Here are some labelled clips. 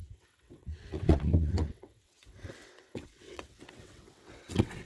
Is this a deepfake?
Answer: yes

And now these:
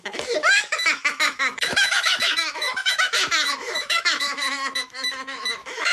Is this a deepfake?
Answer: yes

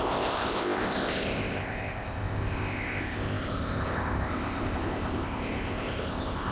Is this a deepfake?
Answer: yes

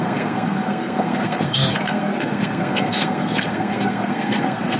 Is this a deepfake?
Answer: yes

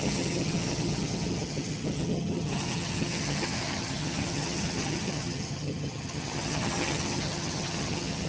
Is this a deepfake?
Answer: yes